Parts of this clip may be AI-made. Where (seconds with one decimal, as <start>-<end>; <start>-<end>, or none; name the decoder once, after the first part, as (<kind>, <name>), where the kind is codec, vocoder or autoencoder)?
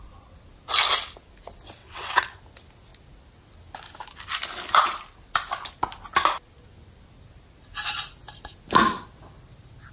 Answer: 1.8-2.4 (vocoder, WaveNeXt)